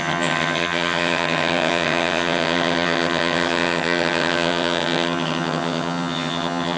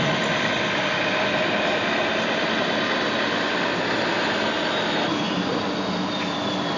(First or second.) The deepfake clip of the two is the first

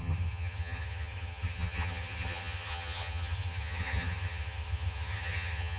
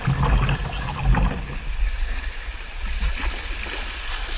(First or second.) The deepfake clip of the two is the first